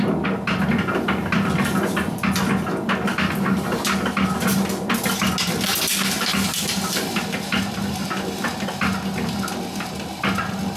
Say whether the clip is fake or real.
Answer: real